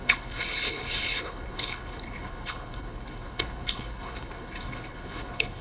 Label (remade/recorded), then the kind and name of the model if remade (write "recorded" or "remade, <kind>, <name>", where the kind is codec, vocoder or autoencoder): remade, codec, HILCodec